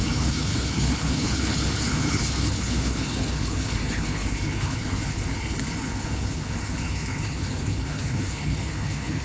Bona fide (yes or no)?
no